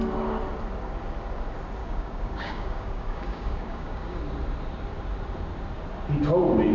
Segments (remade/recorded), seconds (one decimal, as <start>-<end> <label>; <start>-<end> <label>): 0.0-1.8 recorded; 1.8-4.2 remade; 4.2-6.7 recorded